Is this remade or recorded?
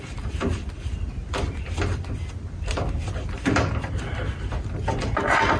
recorded